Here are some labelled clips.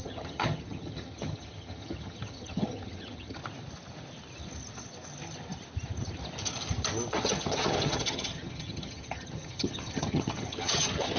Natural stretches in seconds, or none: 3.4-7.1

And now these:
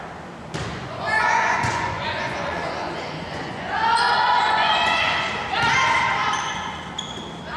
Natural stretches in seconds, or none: 0.0-0.7; 5.3-6.2; 6.9-7.6

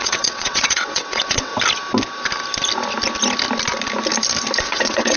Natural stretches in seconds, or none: 1.5-4.6

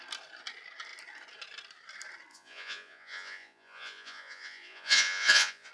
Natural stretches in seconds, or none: 0.0-2.3